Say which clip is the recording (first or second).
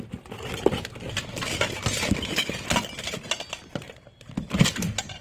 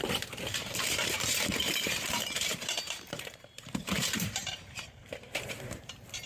first